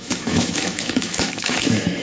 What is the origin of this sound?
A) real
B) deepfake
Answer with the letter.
B